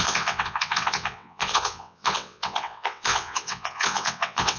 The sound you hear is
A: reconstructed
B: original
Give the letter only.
A